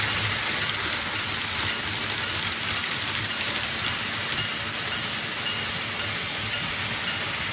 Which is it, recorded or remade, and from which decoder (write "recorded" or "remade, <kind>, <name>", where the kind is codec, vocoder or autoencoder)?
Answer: recorded